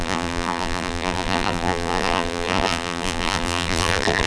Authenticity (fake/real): fake